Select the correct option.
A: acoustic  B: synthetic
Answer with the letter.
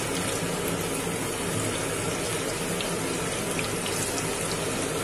A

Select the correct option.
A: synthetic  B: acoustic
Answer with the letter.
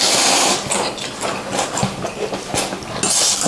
B